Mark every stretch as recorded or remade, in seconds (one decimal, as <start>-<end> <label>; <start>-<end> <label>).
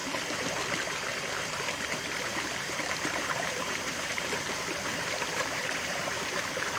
0.0-2.3 recorded; 2.3-6.8 remade